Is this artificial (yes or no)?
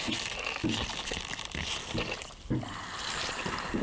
no